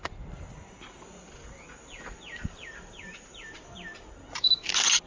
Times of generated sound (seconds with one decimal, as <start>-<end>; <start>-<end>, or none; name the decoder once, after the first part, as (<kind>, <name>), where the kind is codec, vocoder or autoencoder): 2.3-4.6 (vocoder, BigVGAN v2)